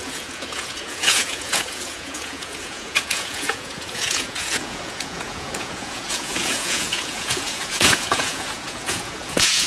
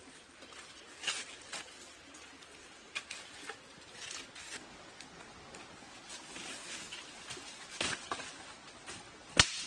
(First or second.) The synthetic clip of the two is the first